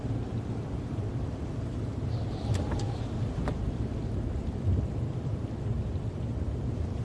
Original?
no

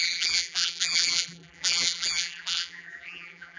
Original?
no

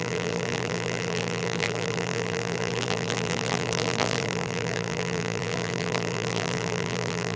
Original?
no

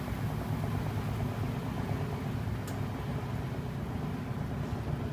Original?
yes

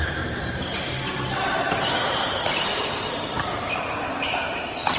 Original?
no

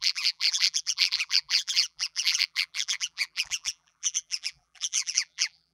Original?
no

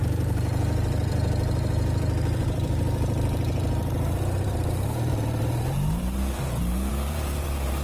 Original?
no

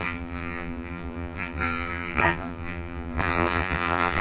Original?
no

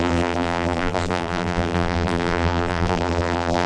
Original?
no